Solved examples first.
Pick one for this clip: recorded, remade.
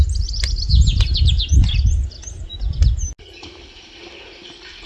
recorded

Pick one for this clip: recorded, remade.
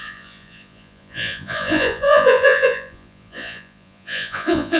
remade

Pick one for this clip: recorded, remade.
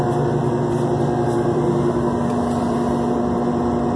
remade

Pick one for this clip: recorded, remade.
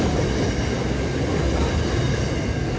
recorded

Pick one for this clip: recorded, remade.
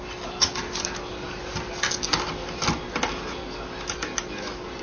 recorded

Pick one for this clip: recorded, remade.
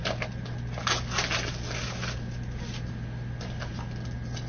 recorded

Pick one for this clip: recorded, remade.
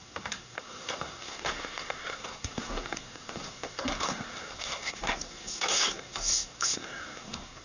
remade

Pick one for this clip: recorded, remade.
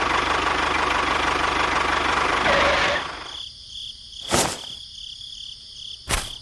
recorded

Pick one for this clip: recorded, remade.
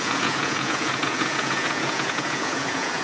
remade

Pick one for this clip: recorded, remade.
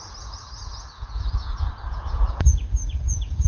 remade